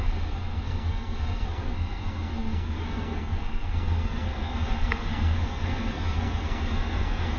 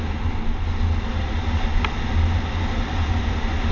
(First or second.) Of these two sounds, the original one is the second